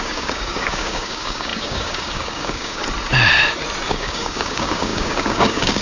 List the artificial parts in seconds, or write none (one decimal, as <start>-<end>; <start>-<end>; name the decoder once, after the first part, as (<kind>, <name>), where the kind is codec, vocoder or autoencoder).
0.0-2.8 (codec, DAC); 3.9-5.8